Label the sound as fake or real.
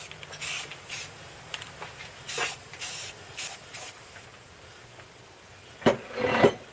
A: real